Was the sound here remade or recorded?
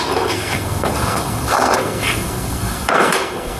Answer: remade